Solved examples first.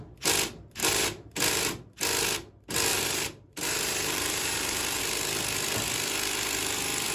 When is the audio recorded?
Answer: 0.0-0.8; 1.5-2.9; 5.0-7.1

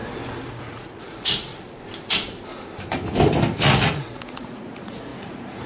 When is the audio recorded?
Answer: 0.0-0.5; 1.5-3.6